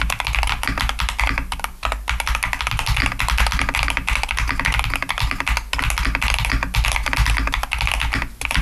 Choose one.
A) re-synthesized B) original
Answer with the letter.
B